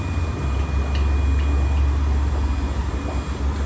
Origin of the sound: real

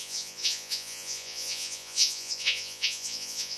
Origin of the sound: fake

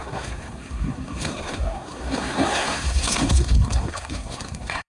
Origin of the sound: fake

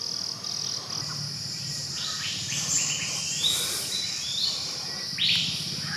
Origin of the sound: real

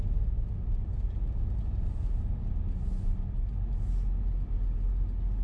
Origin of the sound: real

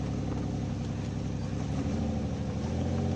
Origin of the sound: real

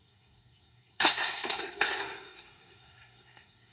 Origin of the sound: fake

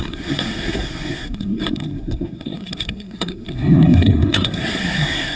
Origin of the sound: fake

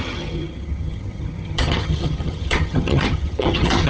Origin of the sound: fake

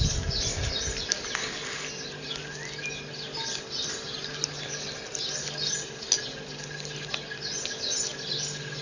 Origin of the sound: real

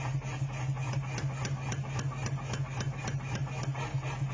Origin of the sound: real